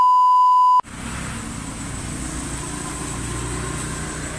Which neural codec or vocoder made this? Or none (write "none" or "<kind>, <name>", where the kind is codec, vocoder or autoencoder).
none